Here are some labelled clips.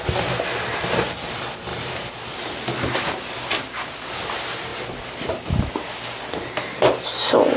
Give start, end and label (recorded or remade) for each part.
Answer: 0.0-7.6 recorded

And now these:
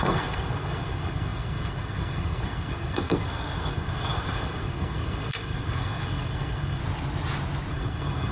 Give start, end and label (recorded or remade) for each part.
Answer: 0.0-6.8 remade; 6.8-7.7 recorded; 7.7-8.3 remade

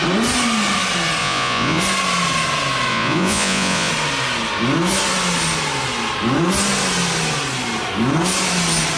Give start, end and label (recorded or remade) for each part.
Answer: 0.0-1.2 recorded; 1.2-1.8 remade; 1.8-2.9 recorded; 2.9-3.9 remade; 3.9-9.0 recorded

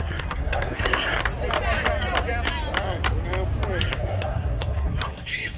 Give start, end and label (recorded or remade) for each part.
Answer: 0.0-1.2 remade; 1.2-3.8 recorded; 3.8-5.6 remade

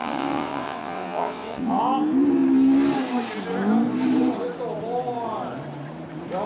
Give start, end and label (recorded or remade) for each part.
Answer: 0.0-1.8 remade; 1.8-6.5 recorded

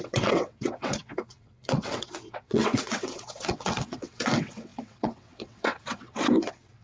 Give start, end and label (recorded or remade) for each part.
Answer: 0.0-6.8 remade